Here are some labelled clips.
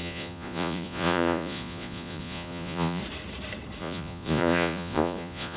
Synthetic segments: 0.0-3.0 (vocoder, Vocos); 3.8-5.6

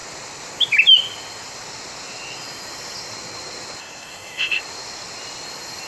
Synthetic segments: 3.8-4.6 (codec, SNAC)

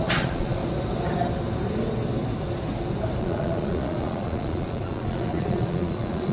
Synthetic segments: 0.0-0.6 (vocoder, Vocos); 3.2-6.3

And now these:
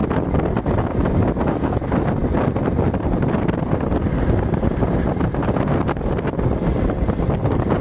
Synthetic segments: none